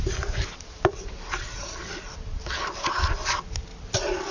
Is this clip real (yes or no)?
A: yes